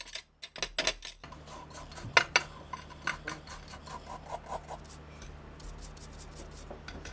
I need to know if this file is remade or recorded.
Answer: recorded